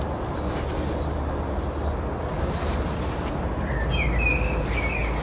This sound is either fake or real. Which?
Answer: real